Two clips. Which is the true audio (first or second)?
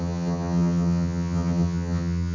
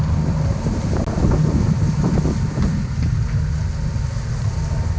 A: second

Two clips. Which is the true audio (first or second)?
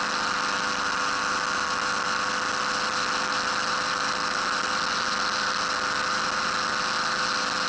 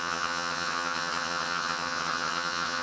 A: first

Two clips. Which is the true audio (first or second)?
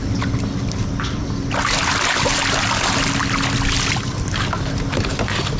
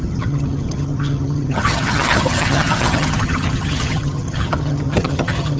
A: first